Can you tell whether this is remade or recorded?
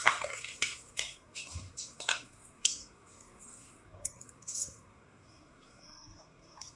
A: remade